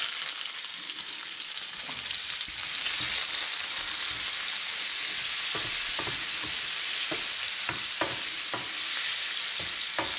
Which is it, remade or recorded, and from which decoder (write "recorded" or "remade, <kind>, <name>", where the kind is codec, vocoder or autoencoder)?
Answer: recorded